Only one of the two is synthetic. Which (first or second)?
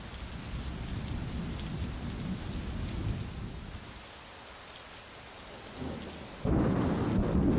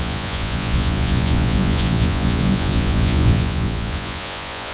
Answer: second